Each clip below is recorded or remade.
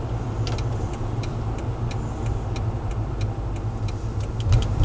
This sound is recorded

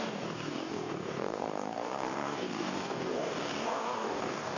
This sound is remade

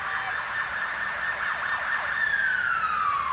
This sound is recorded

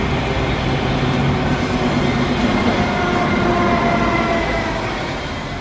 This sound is recorded